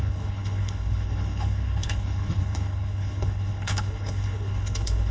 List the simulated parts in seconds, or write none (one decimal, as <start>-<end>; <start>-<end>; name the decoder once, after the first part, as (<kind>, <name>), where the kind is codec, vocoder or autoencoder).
0.0-5.1 (codec, HILCodec)